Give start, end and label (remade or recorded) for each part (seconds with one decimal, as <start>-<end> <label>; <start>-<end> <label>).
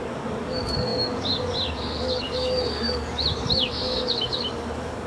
0.0-5.1 remade